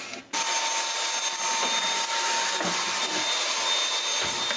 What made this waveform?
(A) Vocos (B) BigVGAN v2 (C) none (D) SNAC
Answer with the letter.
C